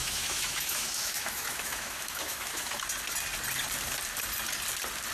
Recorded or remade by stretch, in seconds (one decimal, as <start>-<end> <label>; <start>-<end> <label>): 0.0-2.8 remade; 2.8-5.1 recorded